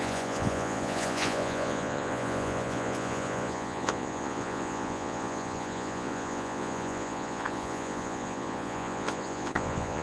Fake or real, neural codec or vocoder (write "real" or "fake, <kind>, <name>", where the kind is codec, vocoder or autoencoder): fake, vocoder, Vocos